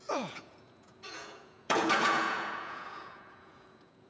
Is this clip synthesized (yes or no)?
yes